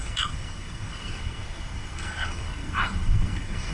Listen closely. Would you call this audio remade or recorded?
remade